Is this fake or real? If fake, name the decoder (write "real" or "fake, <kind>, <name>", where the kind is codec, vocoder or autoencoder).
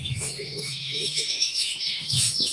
fake, autoencoder, DAC-VAE